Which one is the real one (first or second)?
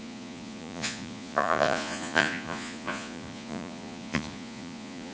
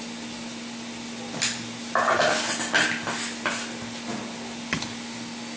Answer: second